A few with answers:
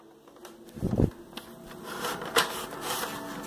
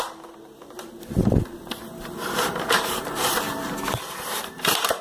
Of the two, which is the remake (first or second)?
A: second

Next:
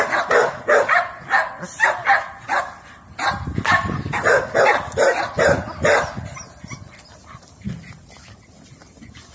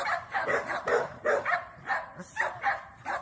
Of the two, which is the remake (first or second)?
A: second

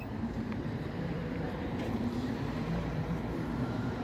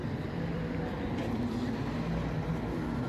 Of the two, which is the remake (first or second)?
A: first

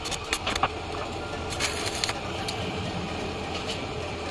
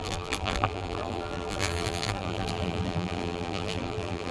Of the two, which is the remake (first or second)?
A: second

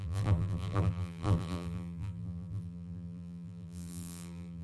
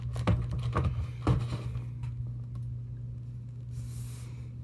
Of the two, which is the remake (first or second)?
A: first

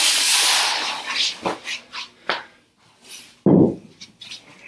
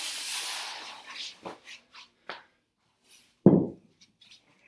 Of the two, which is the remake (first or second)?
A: second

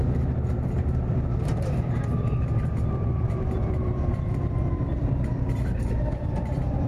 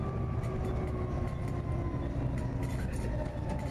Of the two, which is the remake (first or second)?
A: first